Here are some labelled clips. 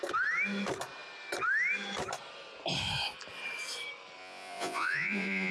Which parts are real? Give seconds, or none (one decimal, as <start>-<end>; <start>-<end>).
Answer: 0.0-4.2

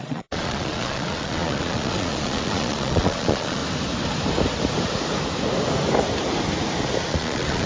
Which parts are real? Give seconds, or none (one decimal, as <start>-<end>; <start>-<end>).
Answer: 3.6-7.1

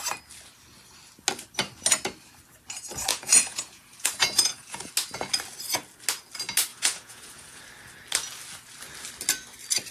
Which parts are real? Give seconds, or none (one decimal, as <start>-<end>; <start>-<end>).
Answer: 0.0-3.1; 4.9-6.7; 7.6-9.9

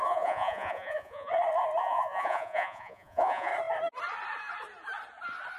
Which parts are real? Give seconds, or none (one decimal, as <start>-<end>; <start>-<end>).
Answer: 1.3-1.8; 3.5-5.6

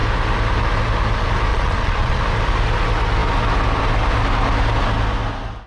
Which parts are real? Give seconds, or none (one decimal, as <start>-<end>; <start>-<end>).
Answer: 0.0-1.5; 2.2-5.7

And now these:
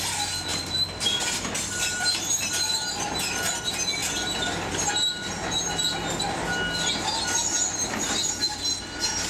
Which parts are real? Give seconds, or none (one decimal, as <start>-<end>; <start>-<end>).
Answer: 0.0-9.3